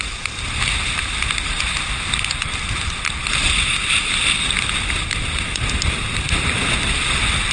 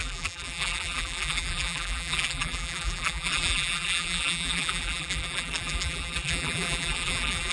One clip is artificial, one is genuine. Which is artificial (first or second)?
second